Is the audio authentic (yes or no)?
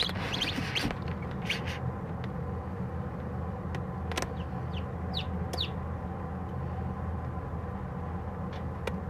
yes